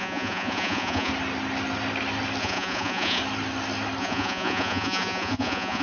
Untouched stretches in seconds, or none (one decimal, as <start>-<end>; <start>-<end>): 1.1-2.4; 3.2-4.0